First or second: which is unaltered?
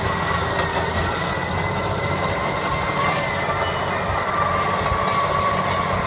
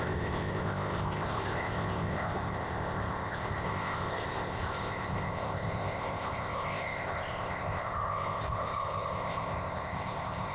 first